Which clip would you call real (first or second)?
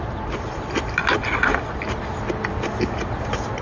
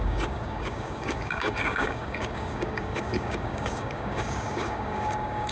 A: first